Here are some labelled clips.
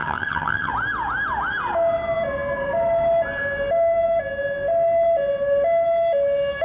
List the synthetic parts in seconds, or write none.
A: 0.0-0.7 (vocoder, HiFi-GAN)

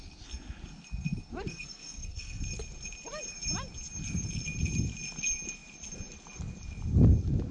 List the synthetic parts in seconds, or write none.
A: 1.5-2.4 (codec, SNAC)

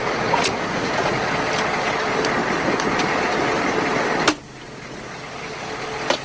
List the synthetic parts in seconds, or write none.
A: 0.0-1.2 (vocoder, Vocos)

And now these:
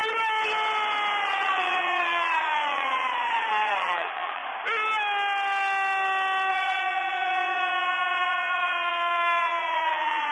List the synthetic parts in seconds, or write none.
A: 1.2-4.4 (vocoder, Vocos); 6.5-10.3